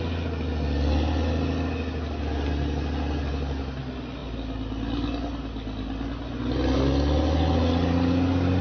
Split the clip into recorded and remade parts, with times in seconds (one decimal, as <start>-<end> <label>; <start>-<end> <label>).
0.0-8.6 recorded